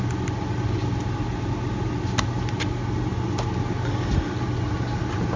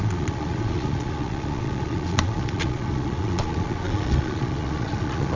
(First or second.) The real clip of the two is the first